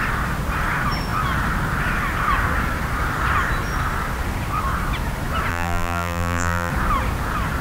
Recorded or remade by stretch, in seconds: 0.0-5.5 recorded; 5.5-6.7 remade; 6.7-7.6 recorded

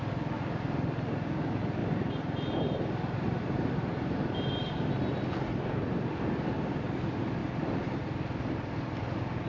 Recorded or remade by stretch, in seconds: 0.0-1.8 recorded; 1.8-4.9 remade; 4.9-9.5 recorded

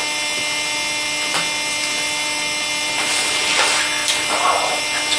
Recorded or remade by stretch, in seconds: 0.0-4.0 recorded; 4.0-4.8 remade; 4.8-5.2 recorded

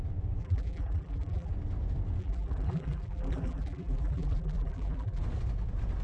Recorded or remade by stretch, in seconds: 0.0-0.4 recorded; 0.4-1.5 remade; 1.5-2.2 recorded; 2.2-5.2 remade; 5.2-6.0 recorded

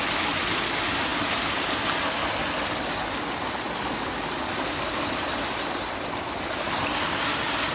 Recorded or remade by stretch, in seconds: 0.0-7.7 recorded

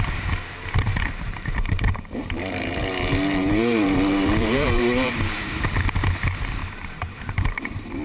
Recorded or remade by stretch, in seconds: 0.0-0.9 recorded; 0.9-5.5 remade; 5.5-6.6 recorded; 6.6-8.0 remade

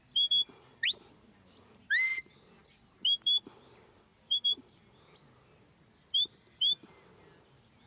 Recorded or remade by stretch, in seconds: 0.0-4.1 recorded; 4.1-4.8 remade; 4.8-7.9 recorded

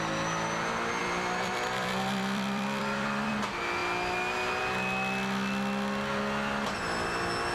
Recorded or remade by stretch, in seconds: 0.0-1.0 recorded; 1.0-3.3 remade; 3.3-7.5 recorded